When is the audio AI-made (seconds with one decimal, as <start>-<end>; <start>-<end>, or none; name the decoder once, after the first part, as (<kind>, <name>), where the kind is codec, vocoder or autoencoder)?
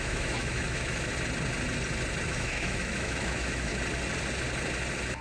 0.0-1.1 (autoencoder, DAC-VAE); 2.2-3.7